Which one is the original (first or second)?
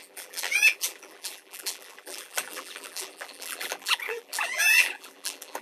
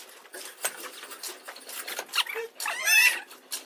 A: second